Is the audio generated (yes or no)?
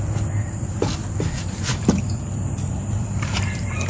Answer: yes